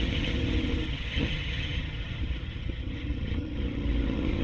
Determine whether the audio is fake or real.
fake